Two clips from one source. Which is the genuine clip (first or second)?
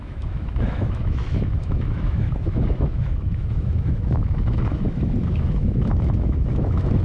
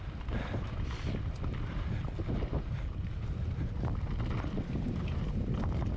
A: second